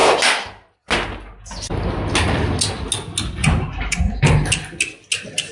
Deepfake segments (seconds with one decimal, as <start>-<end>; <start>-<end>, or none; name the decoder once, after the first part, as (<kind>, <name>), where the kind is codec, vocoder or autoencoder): 3.4-4.0 (vocoder, BigVGAN v2)